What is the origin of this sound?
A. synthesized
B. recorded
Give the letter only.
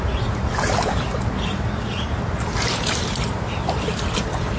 A